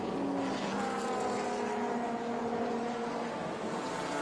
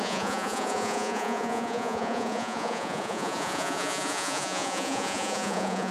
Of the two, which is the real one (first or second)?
first